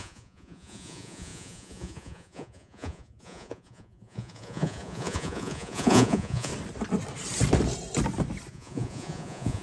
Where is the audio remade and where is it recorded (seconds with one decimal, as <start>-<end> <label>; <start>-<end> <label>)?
0.0-6.5 remade; 6.5-8.5 recorded; 8.5-9.6 remade